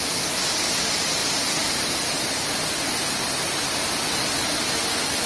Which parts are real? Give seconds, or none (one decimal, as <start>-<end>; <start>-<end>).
0.0-5.3